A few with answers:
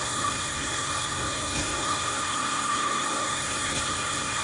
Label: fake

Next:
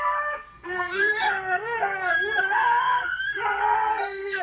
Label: fake